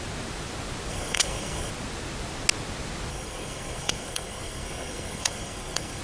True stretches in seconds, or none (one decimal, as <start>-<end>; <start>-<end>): 0.0-0.9; 1.7-3.1